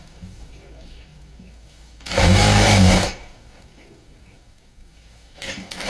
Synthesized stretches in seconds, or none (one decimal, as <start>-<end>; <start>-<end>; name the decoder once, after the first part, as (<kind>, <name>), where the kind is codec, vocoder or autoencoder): 0.0-5.9 (codec, DAC)